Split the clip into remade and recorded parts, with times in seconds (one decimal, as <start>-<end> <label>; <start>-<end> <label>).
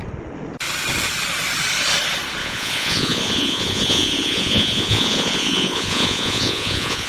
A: 0.0-2.4 recorded; 2.4-7.1 remade